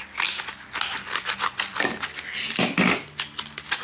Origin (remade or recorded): recorded